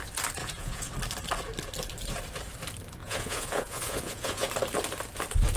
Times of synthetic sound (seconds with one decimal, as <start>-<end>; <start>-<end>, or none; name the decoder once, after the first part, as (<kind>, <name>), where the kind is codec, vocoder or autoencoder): 0.4-0.9 (vocoder, Vocos); 3.0-4.5